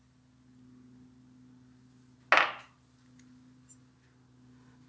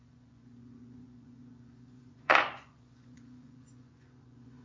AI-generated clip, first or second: second